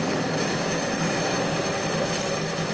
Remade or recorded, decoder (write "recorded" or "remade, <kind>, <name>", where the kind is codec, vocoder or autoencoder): remade, codec, DAC